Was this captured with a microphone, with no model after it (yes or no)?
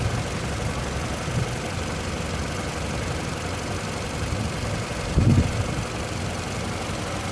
yes